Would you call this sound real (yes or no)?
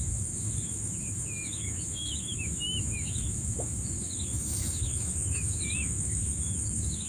no